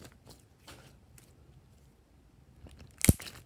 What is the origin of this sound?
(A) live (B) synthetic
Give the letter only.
A